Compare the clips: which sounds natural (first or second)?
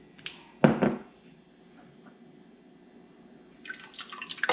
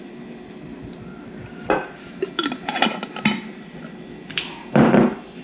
first